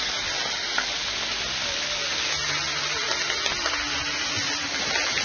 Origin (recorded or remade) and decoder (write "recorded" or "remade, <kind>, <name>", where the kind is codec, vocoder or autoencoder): recorded